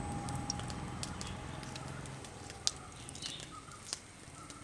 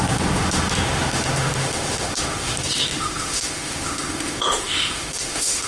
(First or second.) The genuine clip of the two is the first